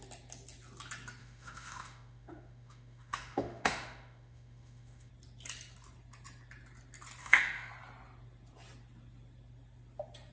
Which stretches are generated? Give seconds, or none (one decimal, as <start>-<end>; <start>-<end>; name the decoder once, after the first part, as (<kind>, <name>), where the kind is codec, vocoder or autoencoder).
1.2-5.1 (autoencoder, DAC-VAE); 7.2-7.7

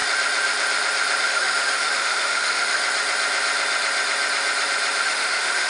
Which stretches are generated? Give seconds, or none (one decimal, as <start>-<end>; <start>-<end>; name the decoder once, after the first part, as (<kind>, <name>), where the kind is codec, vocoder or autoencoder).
1.2-2.8 (autoencoder, DAC-VAE); 5.0-5.7

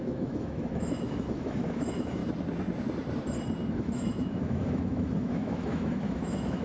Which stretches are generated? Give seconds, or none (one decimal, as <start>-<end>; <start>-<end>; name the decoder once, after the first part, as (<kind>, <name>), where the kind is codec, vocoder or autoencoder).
0.0-2.2 (autoencoder, DAC-VAE); 3.7-6.6

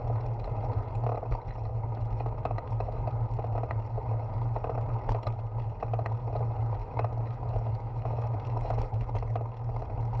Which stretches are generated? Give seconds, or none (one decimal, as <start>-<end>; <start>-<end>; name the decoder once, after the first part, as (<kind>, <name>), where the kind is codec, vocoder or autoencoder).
1.7-3.1 (autoencoder, DAC-VAE); 6.8-8.9

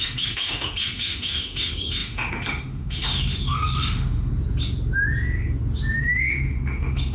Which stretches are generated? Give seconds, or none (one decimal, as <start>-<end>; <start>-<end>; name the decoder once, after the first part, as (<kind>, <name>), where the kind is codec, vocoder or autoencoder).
0.0-4.3 (autoencoder, DAC-VAE); 6.0-7.1

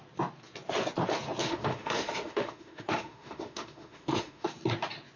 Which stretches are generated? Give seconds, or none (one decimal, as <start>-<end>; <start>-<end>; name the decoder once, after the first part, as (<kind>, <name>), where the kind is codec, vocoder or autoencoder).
1.4-4.5 (autoencoder, DAC-VAE)

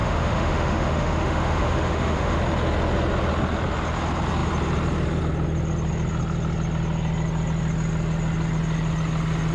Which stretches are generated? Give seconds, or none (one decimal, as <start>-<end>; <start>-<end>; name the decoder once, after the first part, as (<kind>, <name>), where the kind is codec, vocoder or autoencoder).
0.0-2.4 (autoencoder, DAC-VAE)

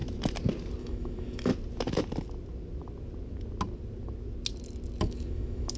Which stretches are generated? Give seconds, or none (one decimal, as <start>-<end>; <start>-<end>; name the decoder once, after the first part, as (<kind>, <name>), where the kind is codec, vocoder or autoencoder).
0.8-1.5 (autoencoder, DAC-VAE); 5.0-5.8